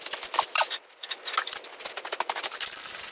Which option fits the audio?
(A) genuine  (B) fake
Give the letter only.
A